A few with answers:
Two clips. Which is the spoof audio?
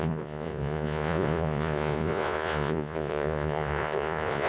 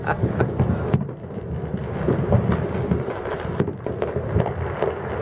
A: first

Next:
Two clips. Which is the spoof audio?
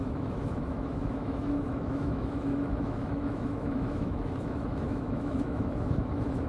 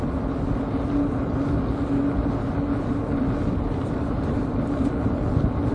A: first